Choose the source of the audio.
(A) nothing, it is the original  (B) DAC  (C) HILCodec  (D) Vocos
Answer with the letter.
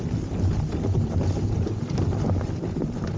A